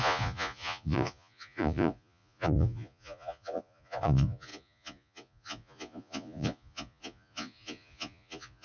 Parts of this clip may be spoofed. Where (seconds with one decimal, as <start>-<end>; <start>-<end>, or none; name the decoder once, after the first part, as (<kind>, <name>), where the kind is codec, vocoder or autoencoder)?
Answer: 0.0-8.6 (vocoder, Vocos)